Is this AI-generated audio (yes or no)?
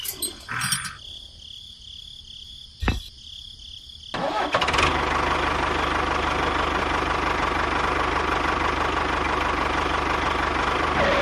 no